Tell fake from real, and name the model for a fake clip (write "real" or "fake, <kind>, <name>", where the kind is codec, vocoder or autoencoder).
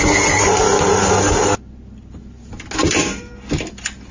real